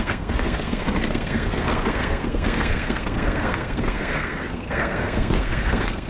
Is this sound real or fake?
fake